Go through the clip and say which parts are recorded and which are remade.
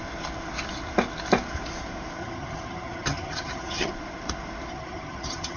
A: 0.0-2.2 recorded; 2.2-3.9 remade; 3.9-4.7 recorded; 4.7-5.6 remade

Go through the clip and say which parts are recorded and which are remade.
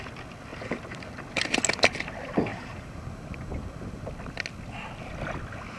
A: 0.0-2.5 recorded; 2.5-4.1 remade; 4.1-5.8 recorded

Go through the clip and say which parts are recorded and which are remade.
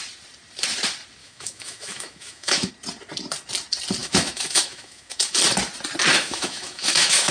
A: 0.0-1.2 recorded; 1.2-2.7 remade; 2.7-4.0 recorded; 4.0-5.4 remade; 5.4-6.1 recorded; 6.1-7.3 remade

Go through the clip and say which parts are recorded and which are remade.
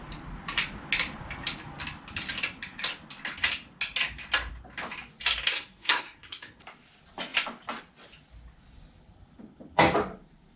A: 0.0-5.5 recorded; 5.5-6.6 remade; 6.6-10.6 recorded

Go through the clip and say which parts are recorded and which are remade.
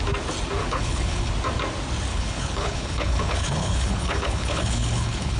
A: 0.0-0.6 recorded; 0.6-1.3 remade; 1.3-2.1 recorded; 2.1-5.4 remade